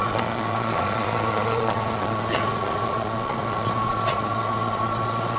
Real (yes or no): no